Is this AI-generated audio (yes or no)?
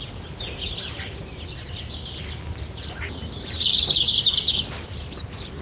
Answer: no